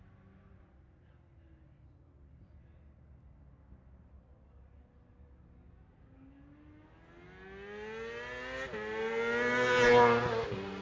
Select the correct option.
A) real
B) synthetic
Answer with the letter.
A